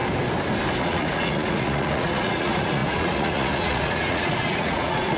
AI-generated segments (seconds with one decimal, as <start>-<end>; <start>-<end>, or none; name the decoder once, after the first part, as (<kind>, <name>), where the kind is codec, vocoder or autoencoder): 0.8-5.2 (vocoder, Vocos)